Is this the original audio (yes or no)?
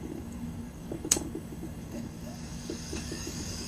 no